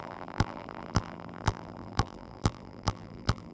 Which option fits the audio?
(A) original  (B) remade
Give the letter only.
B